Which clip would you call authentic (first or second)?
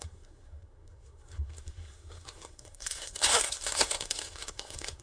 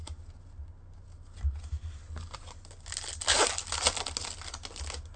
second